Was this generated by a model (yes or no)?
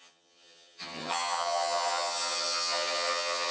yes